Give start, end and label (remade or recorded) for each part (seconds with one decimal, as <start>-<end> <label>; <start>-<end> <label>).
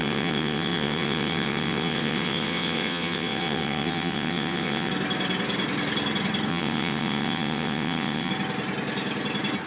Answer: 0.0-4.9 remade; 4.9-6.5 recorded; 6.5-8.3 remade; 8.3-9.7 recorded